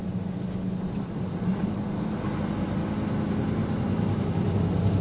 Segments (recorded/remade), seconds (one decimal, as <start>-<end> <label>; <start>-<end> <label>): 0.0-5.0 recorded